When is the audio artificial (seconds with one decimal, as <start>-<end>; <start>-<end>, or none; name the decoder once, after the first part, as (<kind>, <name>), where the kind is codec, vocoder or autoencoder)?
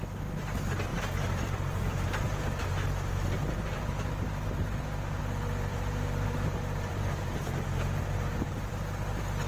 0.9-5.2 (vocoder, BigVGAN v2); 5.7-8.7